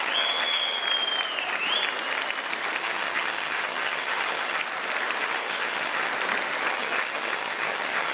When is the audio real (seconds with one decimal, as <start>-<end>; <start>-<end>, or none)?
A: 0.8-2.8; 4.6-5.2; 6.1-6.7

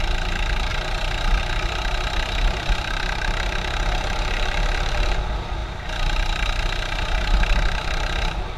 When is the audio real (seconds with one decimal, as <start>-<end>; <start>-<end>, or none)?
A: 0.0-8.6

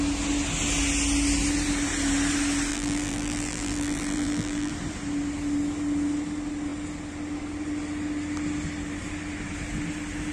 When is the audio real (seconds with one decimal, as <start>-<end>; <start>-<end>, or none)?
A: 0.0-2.7; 4.7-10.3

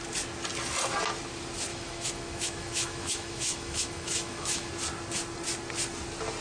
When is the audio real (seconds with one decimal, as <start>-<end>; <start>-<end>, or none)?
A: 0.0-1.7; 4.7-6.4

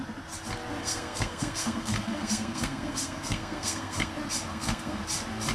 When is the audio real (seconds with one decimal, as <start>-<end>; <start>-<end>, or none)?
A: 0.0-0.8; 4.1-4.5; 5.0-5.5

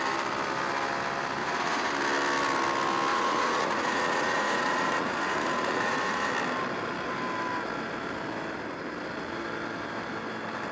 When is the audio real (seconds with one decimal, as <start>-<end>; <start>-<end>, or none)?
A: 0.0-1.4; 1.9-3.1; 6.3-10.7

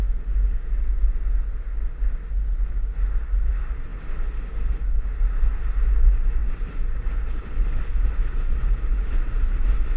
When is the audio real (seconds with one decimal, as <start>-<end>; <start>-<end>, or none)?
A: 0.0-3.9; 4.7-6.4; 7.9-10.0

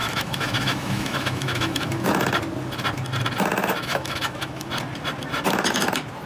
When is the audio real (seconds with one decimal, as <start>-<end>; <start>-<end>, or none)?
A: 2.1-3.8; 4.7-6.3